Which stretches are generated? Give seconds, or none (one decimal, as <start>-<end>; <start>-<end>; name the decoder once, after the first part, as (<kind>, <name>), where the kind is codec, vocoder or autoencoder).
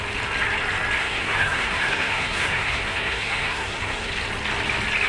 1.0-4.1 (codec, SNAC)